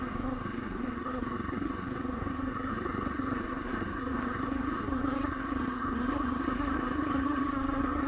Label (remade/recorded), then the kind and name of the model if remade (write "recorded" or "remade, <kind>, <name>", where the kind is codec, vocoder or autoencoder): remade, codec, SNAC